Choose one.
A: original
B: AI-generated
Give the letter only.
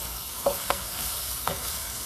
B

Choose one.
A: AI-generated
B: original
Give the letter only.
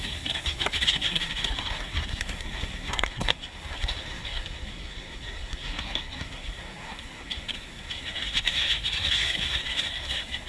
A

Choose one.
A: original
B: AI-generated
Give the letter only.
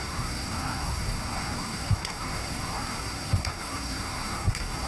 B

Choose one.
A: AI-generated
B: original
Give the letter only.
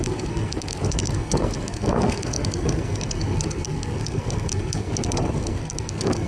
A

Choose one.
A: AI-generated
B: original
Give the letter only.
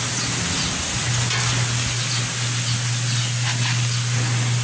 B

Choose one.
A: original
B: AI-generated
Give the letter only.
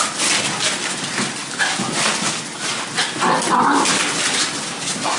A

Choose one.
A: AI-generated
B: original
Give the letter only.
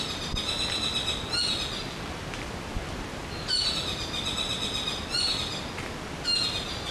B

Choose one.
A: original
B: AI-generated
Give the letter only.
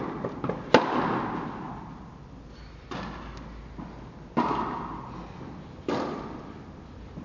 A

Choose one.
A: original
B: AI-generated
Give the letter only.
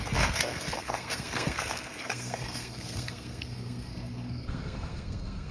B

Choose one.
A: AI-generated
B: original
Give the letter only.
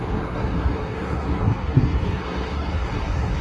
A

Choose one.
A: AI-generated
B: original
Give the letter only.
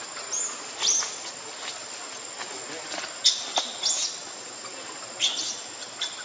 B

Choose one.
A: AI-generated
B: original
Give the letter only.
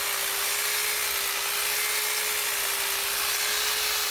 B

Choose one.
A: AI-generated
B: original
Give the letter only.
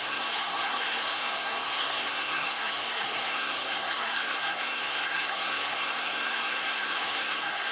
A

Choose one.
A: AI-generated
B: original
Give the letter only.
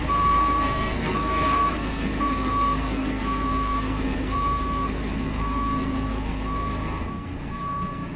A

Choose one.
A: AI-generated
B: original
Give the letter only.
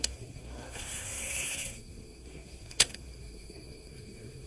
A